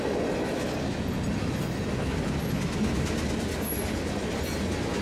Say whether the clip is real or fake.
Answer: real